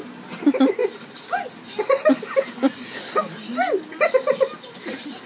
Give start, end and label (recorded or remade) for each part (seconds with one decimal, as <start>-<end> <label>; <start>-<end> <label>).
0.0-5.3 recorded